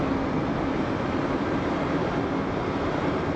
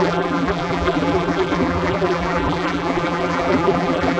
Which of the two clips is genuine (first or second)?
first